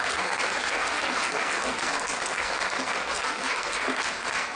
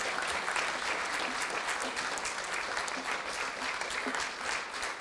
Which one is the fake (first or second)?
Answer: first